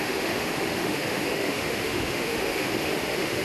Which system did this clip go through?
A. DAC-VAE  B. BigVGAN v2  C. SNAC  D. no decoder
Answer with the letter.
A